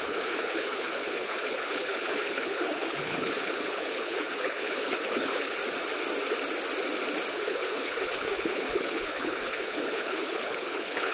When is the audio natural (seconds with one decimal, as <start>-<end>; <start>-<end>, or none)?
5.6-7.3